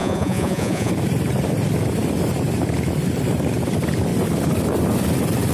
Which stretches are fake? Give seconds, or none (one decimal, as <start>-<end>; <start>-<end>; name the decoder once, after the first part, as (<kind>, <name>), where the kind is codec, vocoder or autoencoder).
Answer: 0.0-0.9 (vocoder, Vocos)